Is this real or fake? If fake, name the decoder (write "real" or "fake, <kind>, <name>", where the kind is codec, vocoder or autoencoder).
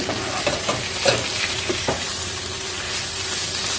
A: real